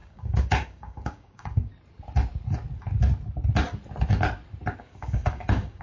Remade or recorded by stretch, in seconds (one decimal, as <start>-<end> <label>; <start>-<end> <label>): 0.0-1.7 remade; 1.7-4.8 recorded; 4.8-5.8 remade